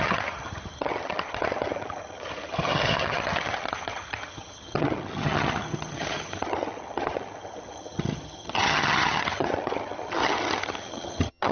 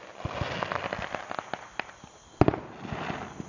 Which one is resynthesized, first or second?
first